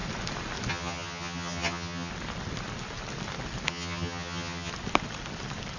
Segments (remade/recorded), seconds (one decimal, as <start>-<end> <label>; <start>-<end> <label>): 0.0-0.7 recorded; 0.7-2.1 remade; 2.1-3.7 recorded; 3.7-4.7 remade; 4.7-5.8 recorded